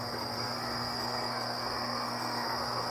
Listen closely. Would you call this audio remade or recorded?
remade